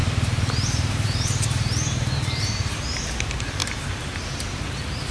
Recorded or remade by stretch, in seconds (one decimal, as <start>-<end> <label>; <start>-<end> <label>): 0.0-3.1 remade; 3.1-3.6 recorded; 3.6-5.1 remade

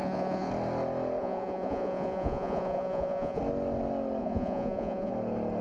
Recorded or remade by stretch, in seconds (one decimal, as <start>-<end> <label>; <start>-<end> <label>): 0.0-0.5 remade; 0.5-1.2 recorded; 1.2-3.4 remade; 3.4-4.2 recorded; 4.2-5.1 remade; 5.1-5.6 recorded

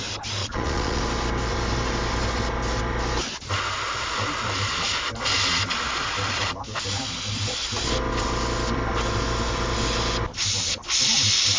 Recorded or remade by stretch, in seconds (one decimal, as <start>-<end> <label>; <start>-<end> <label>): 0.0-0.4 recorded; 0.4-1.0 remade; 1.0-11.6 recorded

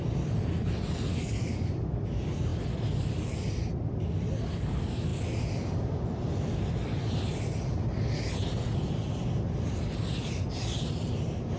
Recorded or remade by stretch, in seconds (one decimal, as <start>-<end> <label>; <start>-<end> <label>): 0.0-1.1 recorded; 1.1-1.7 remade; 1.7-11.6 recorded

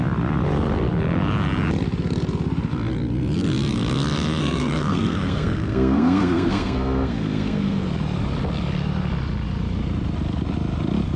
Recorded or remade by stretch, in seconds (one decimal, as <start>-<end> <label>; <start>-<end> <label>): 0.0-4.4 recorded; 4.4-7.9 remade; 7.9-11.2 recorded